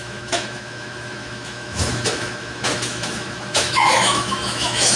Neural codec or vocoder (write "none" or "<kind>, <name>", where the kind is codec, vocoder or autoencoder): autoencoder, DAC-VAE